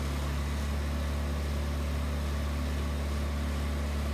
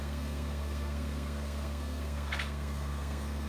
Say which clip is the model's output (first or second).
second